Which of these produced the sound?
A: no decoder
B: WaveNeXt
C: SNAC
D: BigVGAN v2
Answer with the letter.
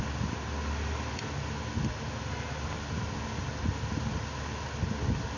A